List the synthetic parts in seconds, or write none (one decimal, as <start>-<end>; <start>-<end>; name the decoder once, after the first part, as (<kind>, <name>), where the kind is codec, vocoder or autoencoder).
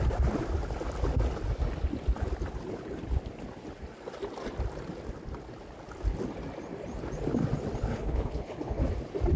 7.9-8.9 (codec, HILCodec)